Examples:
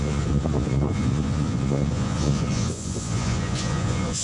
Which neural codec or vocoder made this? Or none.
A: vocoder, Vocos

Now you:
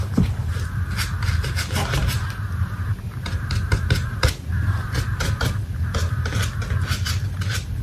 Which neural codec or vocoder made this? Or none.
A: none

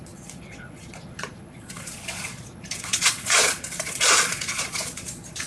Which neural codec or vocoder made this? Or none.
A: vocoder, Vocos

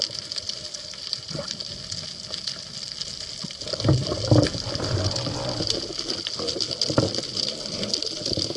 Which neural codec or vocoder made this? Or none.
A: none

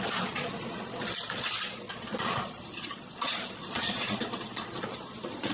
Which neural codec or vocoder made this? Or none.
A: vocoder, Vocos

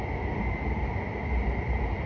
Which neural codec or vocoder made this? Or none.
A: none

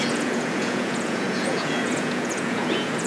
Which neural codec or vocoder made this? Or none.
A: vocoder, Vocos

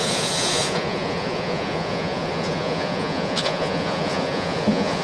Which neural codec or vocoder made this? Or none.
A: vocoder, Vocos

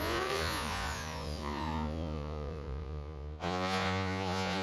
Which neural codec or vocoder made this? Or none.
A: vocoder, Vocos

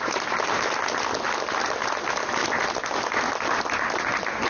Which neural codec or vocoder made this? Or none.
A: none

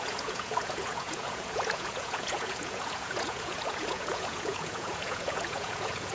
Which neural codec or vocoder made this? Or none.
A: vocoder, Vocos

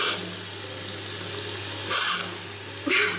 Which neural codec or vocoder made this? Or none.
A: none